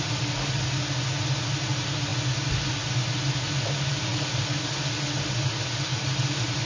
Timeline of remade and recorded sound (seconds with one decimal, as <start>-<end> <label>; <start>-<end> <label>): 0.0-6.7 recorded